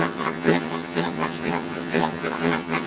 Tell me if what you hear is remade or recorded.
remade